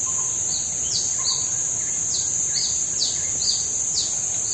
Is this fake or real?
real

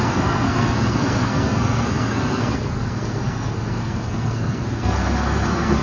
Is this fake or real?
fake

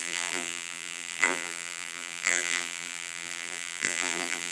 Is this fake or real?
fake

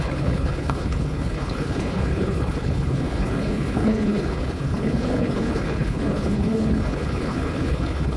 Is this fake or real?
fake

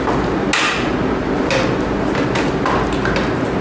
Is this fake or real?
real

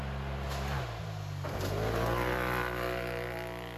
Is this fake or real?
real